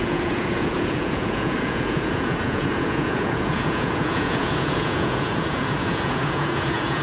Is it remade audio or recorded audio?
remade